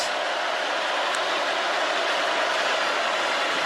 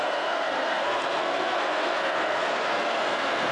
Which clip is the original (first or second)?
first